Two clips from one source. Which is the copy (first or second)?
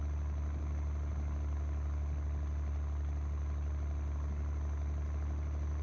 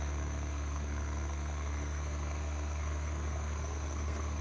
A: second